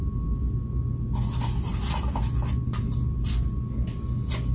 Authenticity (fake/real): real